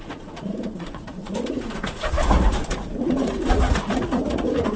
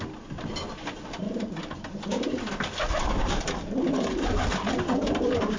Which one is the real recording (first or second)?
second